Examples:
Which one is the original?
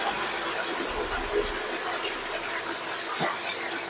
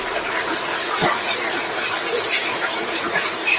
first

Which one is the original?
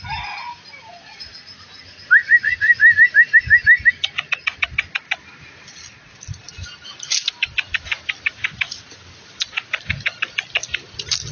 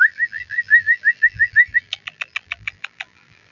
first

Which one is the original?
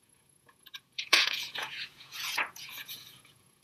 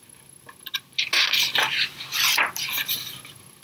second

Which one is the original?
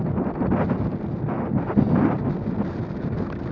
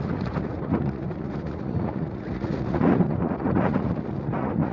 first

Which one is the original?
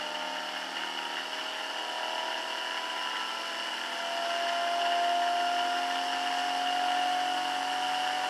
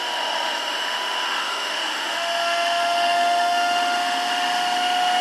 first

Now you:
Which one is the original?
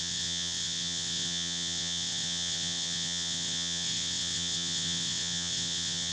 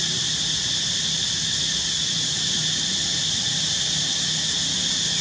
second